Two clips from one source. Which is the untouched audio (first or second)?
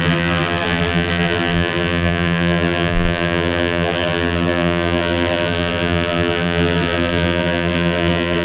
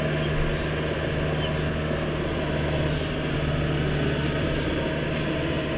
second